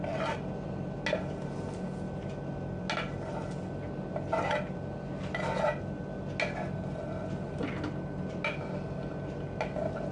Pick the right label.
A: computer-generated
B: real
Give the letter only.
B